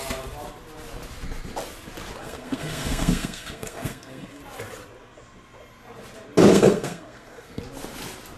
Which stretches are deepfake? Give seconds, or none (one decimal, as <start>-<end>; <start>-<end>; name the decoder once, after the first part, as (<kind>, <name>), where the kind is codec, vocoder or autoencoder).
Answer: 2.2-4.4 (codec, SNAC); 6.5-7.6